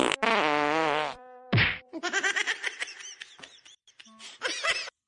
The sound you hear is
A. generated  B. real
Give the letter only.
A